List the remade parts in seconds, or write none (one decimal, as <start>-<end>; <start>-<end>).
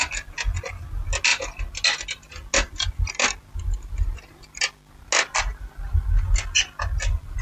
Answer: none